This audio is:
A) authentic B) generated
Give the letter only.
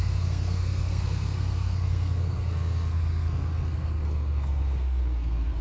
B